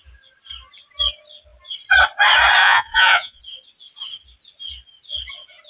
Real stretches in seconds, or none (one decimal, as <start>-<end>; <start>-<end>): 0.0-2.6; 3.4-5.7